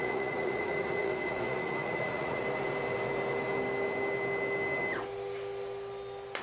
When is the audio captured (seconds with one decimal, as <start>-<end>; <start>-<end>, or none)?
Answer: 2.4-6.4